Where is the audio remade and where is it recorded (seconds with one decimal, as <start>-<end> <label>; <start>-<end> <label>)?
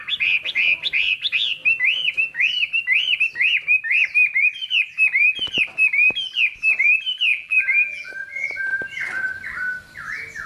0.0-7.3 recorded; 7.3-8.1 remade; 8.1-10.5 recorded